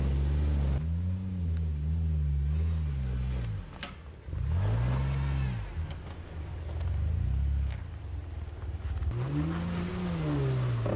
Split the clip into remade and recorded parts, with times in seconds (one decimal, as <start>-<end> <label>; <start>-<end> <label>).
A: 0.0-11.0 recorded